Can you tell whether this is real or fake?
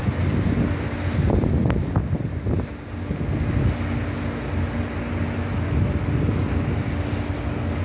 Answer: real